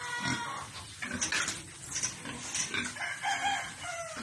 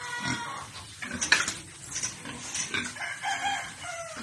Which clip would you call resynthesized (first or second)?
second